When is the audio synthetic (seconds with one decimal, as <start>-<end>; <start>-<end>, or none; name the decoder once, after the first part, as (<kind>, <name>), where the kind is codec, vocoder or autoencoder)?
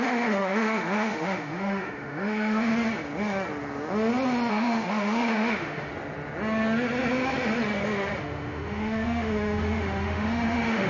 0.0-2.7 (autoencoder, DAC-VAE); 4.5-5.9; 8.2-10.9